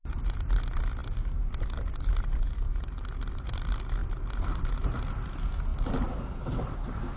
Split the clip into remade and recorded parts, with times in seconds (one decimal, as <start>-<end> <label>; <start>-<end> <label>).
0.0-7.2 recorded